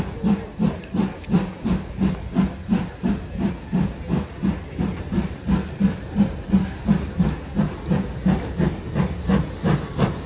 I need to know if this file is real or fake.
real